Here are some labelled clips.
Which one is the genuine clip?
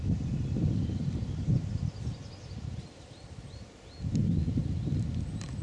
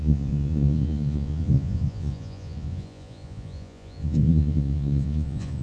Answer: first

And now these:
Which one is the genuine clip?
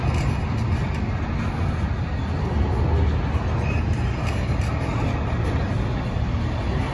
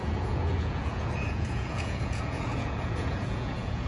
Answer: first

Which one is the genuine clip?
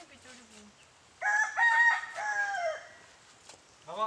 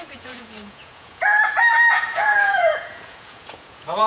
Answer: first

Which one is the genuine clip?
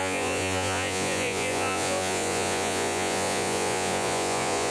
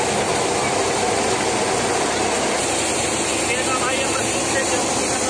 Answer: second